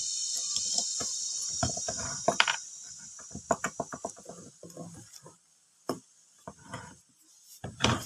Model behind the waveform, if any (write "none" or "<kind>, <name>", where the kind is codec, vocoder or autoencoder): vocoder, BigVGAN v2